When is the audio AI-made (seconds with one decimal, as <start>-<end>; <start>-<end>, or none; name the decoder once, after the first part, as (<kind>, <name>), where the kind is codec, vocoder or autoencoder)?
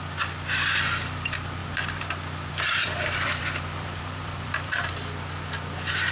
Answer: 1.6-4.9 (vocoder, BigVGAN v2)